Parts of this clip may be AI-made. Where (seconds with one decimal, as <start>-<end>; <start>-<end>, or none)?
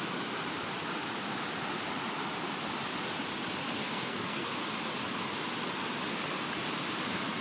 3.8-4.5